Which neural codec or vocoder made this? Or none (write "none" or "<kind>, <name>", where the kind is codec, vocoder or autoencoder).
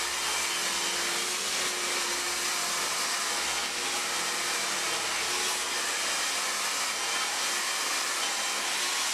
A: none